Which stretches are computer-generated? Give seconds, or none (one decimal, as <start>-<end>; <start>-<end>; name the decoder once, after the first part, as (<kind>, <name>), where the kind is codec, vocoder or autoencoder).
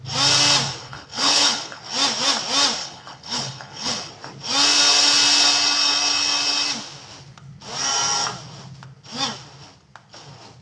0.8-1.8 (codec, HILCodec); 2.8-4.1